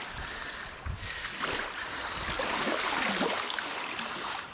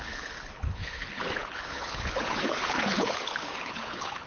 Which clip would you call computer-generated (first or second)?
second